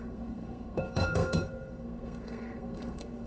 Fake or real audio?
fake